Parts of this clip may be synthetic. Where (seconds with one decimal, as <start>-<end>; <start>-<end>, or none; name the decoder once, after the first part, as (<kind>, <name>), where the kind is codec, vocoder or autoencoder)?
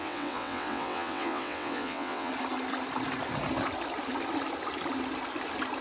0.0-2.3 (vocoder, WaveNeXt)